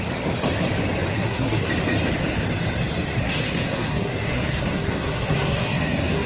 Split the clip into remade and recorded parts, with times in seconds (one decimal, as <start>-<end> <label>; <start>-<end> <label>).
0.0-1.1 recorded; 1.1-1.7 remade; 1.7-3.2 recorded; 3.2-6.3 remade